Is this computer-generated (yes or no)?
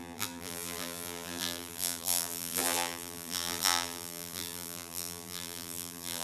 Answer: yes